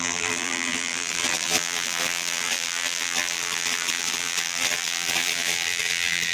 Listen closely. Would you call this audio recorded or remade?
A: remade